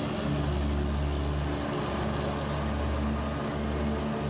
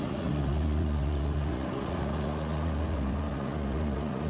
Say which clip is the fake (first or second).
second